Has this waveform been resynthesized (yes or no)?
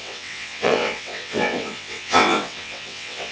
yes